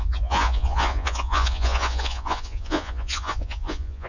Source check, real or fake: fake